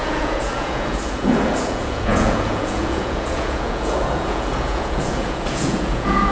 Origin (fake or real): fake